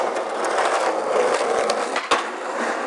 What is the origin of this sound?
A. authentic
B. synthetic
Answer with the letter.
A